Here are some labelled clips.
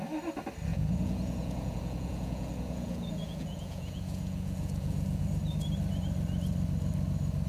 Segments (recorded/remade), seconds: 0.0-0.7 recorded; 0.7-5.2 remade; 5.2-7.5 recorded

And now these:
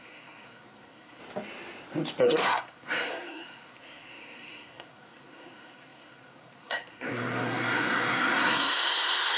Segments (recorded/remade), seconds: 0.0-1.2 remade; 1.2-2.2 recorded; 2.2-9.4 remade

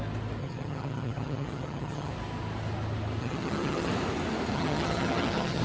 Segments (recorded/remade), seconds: 0.0-0.4 recorded; 0.4-2.1 remade; 2.1-3.2 recorded; 3.2-3.9 remade; 3.9-4.5 recorded; 4.5-5.6 remade

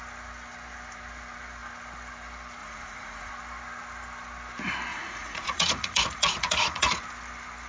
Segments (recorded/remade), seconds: 0.0-2.6 recorded; 2.6-3.3 remade; 3.3-4.9 recorded; 4.9-6.9 remade; 6.9-7.7 recorded